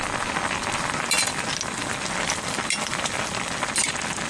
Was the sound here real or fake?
real